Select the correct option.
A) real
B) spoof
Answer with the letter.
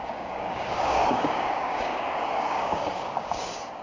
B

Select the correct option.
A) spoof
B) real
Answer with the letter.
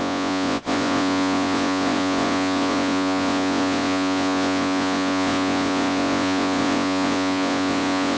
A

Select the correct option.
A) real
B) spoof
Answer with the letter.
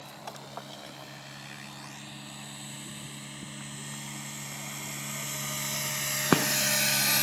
A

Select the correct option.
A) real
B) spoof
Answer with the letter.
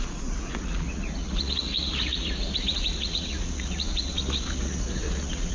B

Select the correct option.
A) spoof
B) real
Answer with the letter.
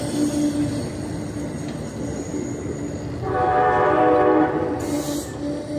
B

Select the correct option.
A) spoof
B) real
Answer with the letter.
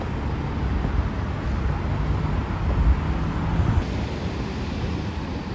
B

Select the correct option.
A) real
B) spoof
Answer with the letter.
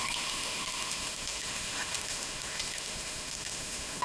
B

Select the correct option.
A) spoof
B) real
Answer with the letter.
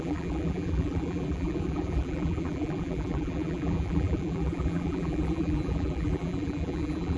A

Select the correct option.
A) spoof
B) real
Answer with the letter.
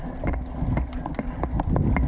B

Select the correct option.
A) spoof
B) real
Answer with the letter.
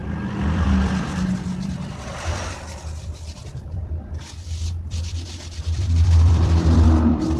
A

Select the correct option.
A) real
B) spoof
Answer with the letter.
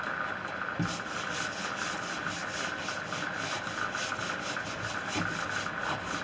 A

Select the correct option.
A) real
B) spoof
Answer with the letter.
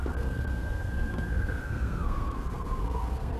B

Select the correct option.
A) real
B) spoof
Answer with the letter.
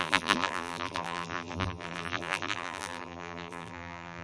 B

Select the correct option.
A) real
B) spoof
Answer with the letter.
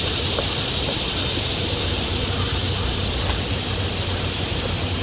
A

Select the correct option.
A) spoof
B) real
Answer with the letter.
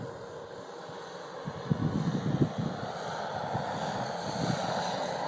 B